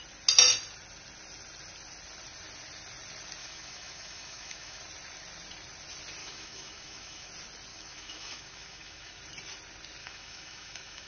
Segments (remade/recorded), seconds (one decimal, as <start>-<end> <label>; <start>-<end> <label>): 0.0-3.4 recorded; 3.4-4.8 remade; 4.8-6.2 recorded; 6.2-7.3 remade; 7.3-7.7 recorded; 7.7-9.2 remade; 9.2-10.0 recorded; 10.0-11.1 remade